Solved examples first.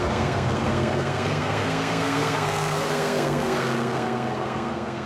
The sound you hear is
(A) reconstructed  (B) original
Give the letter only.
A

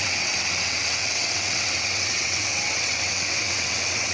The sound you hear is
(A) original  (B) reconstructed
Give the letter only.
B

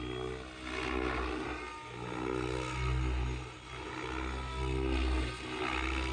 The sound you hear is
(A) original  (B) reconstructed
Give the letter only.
A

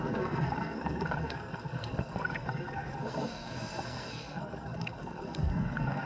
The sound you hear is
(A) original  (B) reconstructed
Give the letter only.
B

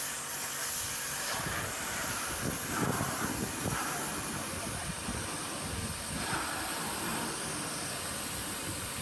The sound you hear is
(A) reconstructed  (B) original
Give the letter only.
B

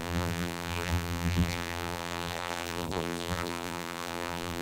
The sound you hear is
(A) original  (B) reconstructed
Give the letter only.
B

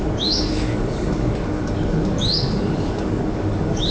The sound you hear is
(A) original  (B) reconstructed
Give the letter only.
B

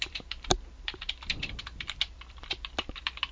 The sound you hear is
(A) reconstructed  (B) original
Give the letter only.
A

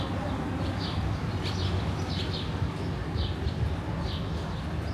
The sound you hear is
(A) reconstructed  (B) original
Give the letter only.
B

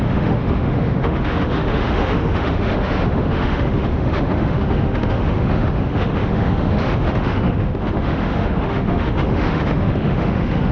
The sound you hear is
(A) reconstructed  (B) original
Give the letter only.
A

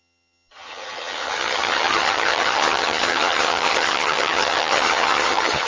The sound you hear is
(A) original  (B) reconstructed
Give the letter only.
B